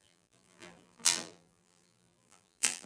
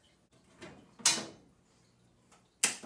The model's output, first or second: first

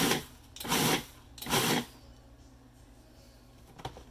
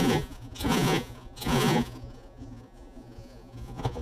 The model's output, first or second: second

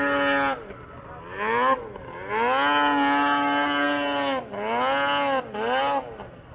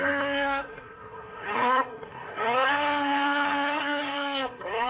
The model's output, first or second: second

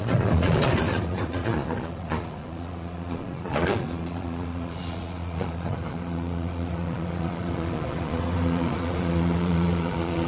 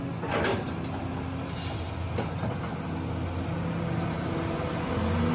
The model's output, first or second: first